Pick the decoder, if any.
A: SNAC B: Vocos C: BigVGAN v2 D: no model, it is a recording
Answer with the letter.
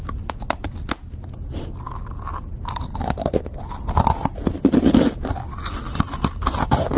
D